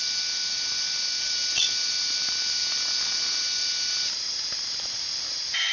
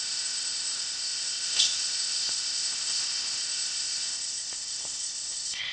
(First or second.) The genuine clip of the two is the first